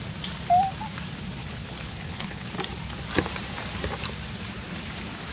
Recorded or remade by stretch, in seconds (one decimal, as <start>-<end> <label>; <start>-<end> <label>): 0.0-1.4 recorded; 1.4-2.5 remade; 2.5-5.3 recorded